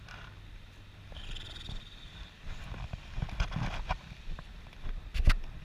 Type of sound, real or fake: real